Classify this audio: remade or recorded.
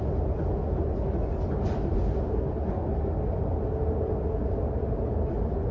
recorded